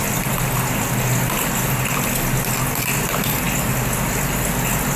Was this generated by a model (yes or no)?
no